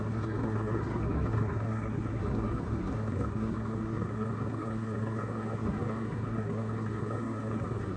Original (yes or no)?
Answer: no